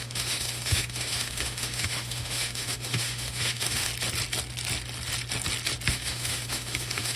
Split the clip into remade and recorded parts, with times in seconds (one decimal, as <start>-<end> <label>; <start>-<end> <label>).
0.0-3.9 remade; 3.9-5.9 recorded; 5.9-7.2 remade